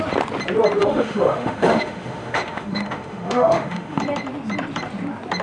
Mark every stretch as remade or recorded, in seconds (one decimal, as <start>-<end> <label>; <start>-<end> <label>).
0.0-0.8 recorded; 0.8-4.0 remade; 4.0-5.4 recorded